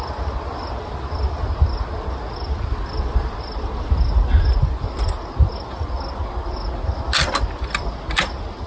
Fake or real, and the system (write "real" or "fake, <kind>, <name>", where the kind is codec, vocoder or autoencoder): real